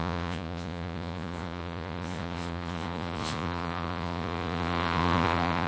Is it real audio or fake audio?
fake